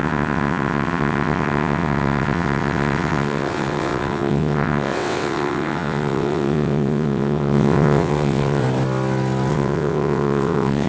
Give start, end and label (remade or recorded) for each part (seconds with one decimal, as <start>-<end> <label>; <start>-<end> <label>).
0.0-8.6 remade; 8.6-9.5 recorded; 9.5-10.9 remade